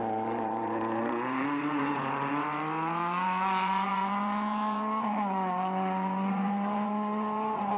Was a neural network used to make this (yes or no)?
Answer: yes